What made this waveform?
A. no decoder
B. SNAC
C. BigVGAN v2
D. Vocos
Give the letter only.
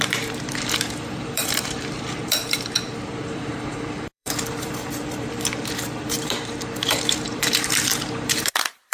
C